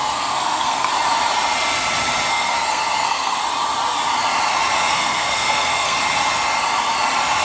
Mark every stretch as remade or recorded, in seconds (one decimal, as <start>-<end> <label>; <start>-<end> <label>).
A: 0.0-0.9 remade; 0.9-2.3 recorded; 2.3-3.4 remade; 3.4-4.9 recorded; 4.9-6.0 remade; 6.0-7.4 recorded